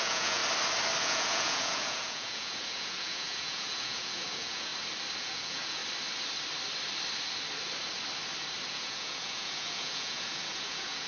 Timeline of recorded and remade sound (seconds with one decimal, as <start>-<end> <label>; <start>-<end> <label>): 0.0-0.4 remade; 0.4-1.0 recorded; 1.0-4.7 remade; 4.7-5.2 recorded; 5.2-5.8 remade; 5.8-8.7 recorded; 8.7-11.1 remade